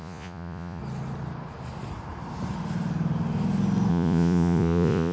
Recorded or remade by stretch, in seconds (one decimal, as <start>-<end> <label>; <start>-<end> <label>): 0.0-0.8 remade; 0.8-3.9 recorded; 3.9-5.1 remade